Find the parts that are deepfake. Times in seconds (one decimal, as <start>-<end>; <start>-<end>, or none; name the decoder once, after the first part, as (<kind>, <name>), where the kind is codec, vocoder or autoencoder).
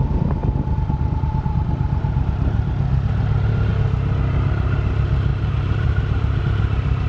5.3-6.4 (vocoder, BigVGAN v2)